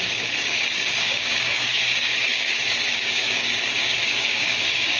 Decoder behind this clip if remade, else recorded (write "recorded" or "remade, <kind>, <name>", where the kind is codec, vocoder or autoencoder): remade, codec, DAC